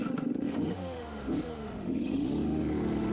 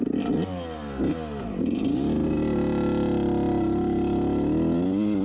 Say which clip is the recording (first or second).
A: second